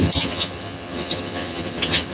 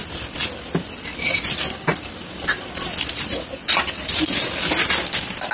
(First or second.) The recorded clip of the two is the second